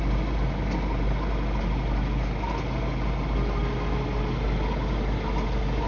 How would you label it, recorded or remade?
recorded